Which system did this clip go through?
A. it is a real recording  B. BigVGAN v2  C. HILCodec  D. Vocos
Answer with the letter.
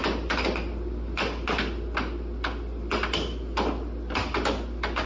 A